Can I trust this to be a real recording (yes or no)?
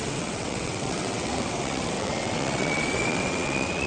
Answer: no